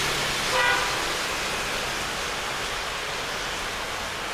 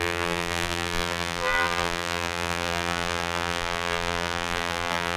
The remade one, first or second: second